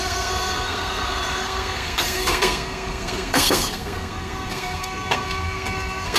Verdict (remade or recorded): remade